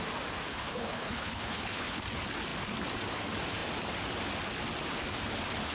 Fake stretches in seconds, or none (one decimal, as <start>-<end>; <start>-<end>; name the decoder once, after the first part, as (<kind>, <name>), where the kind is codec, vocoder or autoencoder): 0.5-2.0 (codec, HILCodec)